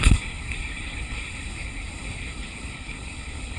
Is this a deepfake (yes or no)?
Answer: yes